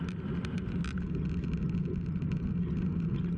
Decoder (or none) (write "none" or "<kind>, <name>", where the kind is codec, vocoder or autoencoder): none